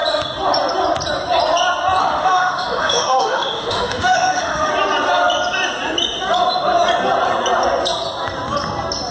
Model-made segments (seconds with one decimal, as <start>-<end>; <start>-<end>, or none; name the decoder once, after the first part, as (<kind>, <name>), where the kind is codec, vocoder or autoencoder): 2.0-4.7 (autoencoder, DAC-VAE)